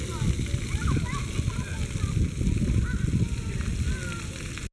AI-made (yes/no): no